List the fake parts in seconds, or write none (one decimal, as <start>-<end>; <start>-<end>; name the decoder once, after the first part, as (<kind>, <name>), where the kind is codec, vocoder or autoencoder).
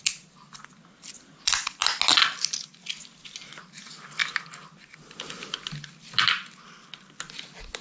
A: none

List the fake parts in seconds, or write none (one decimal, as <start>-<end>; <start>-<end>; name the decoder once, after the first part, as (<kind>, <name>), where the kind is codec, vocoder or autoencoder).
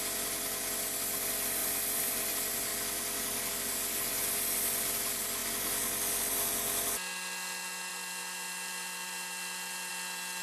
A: 1.6-2.3 (vocoder, BigVGAN v2); 5.4-6.2; 7.9-9.9